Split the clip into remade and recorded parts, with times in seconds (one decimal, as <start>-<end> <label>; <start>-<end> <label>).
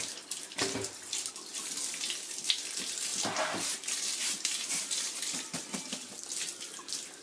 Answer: 0.0-7.2 recorded